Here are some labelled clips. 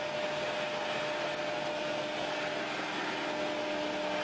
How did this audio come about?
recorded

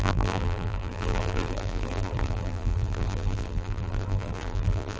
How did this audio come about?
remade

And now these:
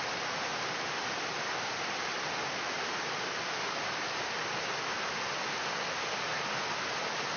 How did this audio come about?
recorded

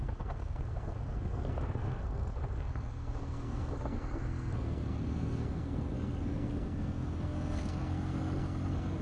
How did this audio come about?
remade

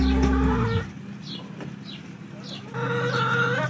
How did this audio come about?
recorded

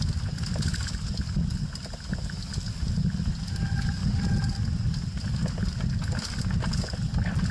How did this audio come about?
recorded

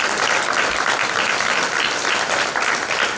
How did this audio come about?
recorded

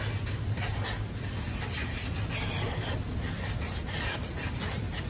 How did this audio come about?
recorded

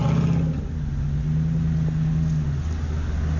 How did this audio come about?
recorded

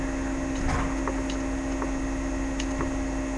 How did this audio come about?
recorded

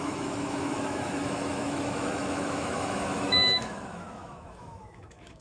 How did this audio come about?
remade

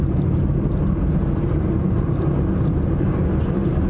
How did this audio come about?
recorded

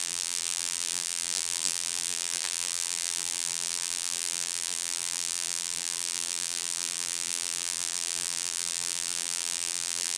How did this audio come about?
remade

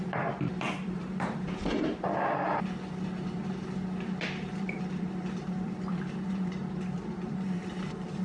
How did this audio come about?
remade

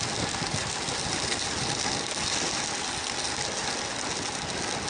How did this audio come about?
recorded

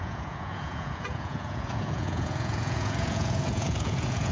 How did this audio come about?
remade